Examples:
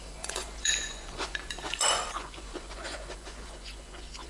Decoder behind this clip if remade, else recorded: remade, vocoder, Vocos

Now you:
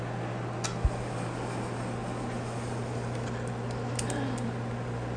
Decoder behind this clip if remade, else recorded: recorded